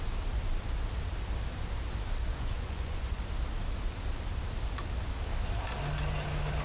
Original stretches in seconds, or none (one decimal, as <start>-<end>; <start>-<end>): 0.0-2.3; 3.2-6.6